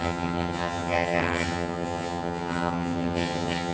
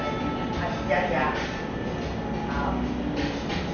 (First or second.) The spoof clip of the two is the first